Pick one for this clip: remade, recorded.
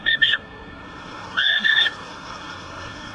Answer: remade